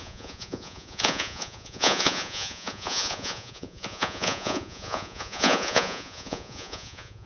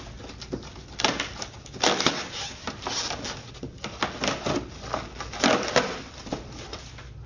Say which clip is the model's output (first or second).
first